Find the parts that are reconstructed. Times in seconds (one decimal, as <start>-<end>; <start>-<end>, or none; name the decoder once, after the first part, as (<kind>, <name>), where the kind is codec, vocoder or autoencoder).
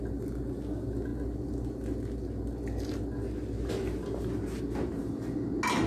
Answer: none